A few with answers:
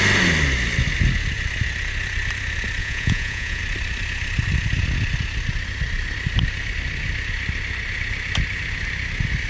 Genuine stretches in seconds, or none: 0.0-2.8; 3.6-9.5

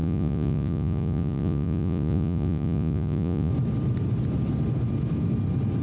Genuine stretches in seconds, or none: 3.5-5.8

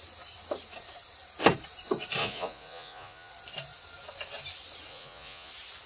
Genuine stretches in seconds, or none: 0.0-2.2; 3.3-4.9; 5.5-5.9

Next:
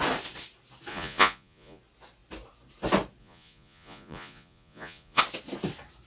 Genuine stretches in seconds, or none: 0.0-0.9; 1.8-3.2; 5.2-6.1

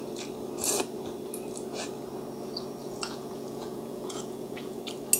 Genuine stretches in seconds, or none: 0.0-2.8; 4.8-5.2